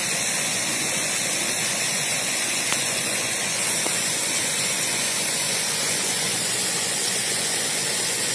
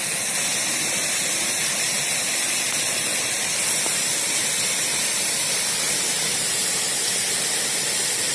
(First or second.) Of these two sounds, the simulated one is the first